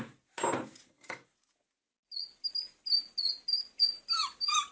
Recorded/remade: recorded